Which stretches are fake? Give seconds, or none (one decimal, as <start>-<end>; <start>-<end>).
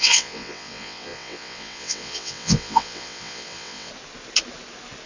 0.0-3.9